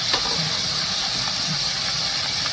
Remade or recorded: recorded